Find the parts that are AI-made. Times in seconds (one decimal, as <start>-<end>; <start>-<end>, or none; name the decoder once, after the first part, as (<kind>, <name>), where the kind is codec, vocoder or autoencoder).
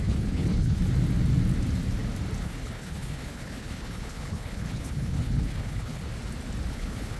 0.0-0.8 (codec, HILCodec); 2.4-6.0; 6.7-7.2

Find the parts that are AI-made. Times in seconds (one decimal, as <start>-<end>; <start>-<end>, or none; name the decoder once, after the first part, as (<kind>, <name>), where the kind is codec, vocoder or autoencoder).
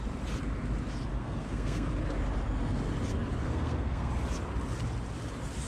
1.1-1.9 (codec, SNAC); 3.4-4.1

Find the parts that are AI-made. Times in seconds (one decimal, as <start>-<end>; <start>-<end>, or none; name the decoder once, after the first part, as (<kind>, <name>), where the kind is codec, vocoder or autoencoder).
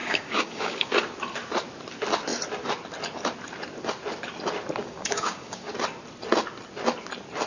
0.0-0.9 (codec, DAC); 4.8-5.7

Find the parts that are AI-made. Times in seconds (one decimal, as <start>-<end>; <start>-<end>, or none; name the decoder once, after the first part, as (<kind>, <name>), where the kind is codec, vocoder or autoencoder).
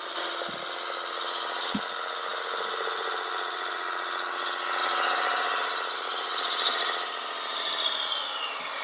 4.8-8.1 (vocoder, BigVGAN v2)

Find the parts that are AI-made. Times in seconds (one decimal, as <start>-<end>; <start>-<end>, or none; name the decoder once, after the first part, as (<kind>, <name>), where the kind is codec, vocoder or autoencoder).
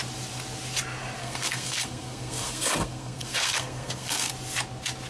1.2-4.3 (codec, SNAC)